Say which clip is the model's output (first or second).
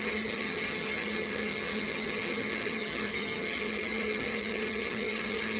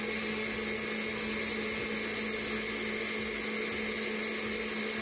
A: first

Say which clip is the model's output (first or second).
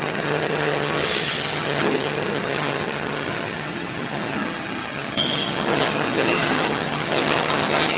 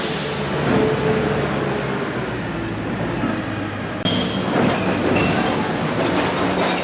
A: first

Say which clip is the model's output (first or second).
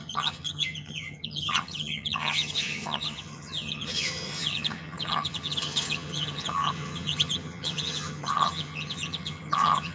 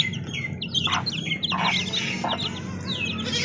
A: first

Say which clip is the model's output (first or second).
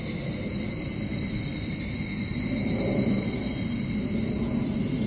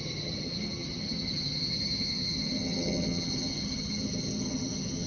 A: second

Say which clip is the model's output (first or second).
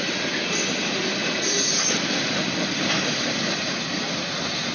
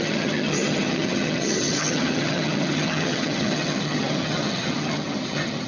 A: second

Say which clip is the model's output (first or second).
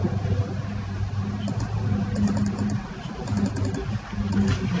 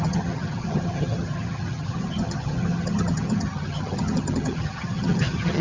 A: second